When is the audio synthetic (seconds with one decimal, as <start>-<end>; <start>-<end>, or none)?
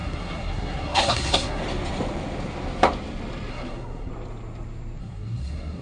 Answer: 0.0-1.6; 3.5-4.1; 5.0-5.8